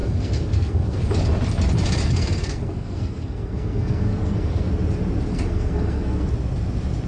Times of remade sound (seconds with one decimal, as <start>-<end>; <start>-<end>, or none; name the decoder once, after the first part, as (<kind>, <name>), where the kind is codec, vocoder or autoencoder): 0.0-1.1 (codec, SNAC); 2.0-4.7; 5.3-6.3